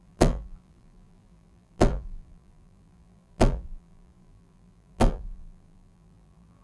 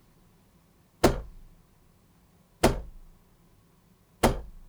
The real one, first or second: second